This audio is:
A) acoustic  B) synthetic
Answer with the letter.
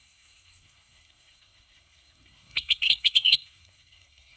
B